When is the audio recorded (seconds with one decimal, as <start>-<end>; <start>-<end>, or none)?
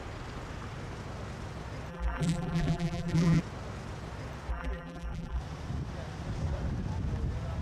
0.0-1.9; 3.4-4.5; 5.4-7.6